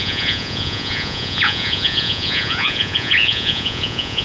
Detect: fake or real fake